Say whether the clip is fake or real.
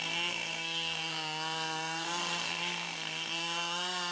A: fake